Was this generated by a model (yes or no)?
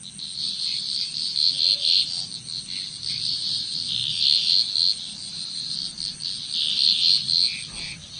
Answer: no